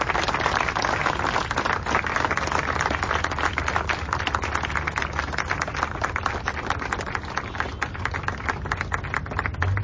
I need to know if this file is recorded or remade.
recorded